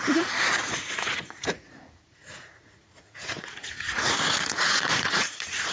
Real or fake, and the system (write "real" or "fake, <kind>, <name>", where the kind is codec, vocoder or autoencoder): fake, vocoder, Vocos